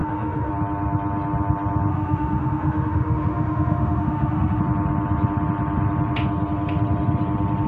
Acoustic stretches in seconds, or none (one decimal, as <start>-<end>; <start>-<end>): 0.5-1.9; 4.6-7.7